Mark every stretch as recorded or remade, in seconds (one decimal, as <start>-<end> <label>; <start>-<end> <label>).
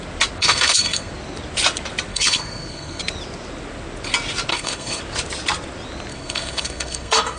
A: 0.0-0.4 recorded; 0.4-1.1 remade; 1.1-2.1 recorded; 2.1-3.0 remade; 3.0-4.5 recorded; 4.5-5.0 remade; 5.0-6.1 recorded; 6.1-7.4 remade